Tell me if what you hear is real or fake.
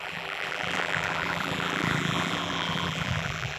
fake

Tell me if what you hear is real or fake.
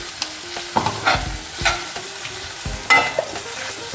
real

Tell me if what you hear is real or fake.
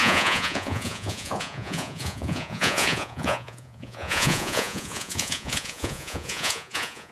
fake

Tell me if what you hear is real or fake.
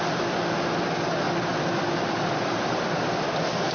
real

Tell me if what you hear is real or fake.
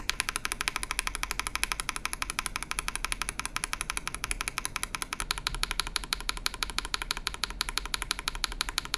real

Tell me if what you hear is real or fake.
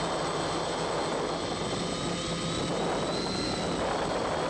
real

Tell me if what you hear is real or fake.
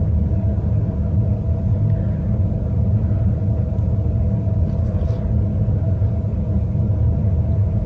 real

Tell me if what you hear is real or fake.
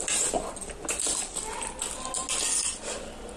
real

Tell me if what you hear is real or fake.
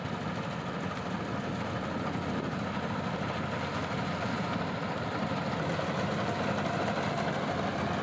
real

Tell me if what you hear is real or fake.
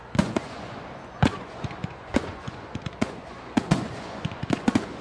fake